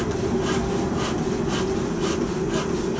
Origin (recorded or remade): recorded